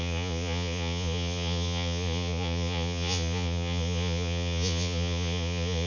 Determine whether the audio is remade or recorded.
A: remade